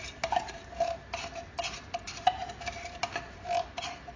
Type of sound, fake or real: real